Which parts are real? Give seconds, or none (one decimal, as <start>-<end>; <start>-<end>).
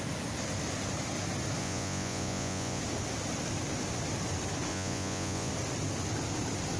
0.0-1.6; 2.8-4.7; 5.5-6.8